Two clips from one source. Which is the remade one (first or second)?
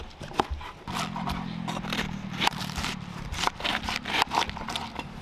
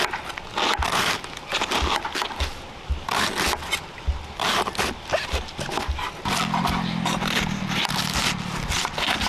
first